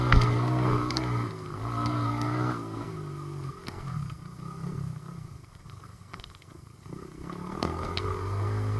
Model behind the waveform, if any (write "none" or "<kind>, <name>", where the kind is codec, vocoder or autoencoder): codec, SNAC